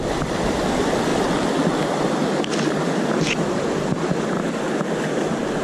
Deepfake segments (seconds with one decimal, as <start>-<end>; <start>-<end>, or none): none